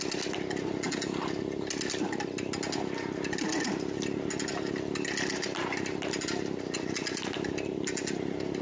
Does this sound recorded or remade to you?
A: recorded